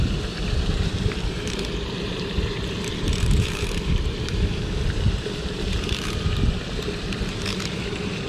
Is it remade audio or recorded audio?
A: remade